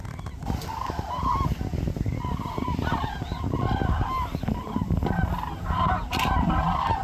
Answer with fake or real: real